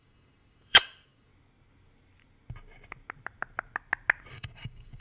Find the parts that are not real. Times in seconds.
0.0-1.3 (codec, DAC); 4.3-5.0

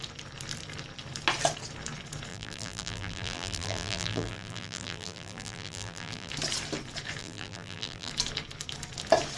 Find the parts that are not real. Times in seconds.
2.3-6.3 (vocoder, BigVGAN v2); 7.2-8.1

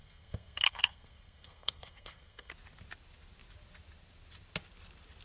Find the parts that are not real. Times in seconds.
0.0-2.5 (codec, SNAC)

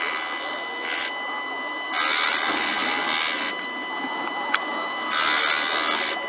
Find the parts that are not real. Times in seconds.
none

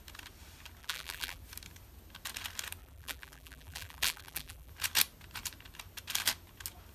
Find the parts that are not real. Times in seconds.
0.8-1.4 (vocoder, BigVGAN v2); 2.8-4.7

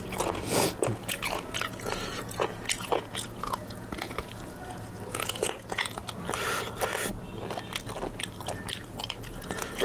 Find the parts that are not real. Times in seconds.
0.0-6.0 (vocoder, Vocos); 9.3-9.8